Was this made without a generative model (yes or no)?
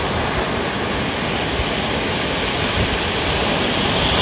yes